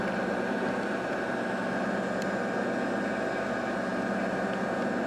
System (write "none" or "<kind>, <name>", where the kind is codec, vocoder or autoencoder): none